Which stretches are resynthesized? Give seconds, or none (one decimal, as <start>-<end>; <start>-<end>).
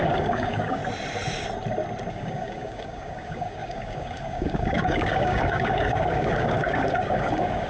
0.0-0.8; 2.1-7.7